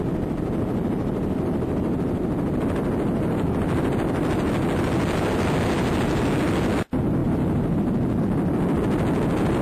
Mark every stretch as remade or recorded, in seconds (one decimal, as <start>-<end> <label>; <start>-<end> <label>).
0.0-9.6 recorded